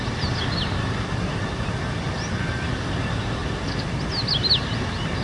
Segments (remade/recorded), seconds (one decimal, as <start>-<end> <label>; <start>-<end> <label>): 0.0-5.2 recorded